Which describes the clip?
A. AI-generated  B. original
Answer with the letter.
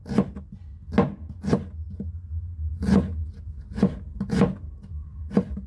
B